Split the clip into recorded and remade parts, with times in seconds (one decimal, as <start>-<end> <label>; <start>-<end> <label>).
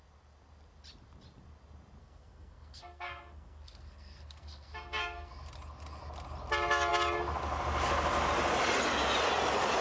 0.0-2.0 recorded; 2.0-5.3 remade; 5.3-9.8 recorded